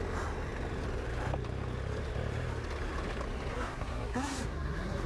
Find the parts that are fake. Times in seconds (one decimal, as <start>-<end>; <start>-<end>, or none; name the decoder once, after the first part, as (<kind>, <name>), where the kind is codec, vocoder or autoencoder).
3.5-5.1 (codec, SNAC)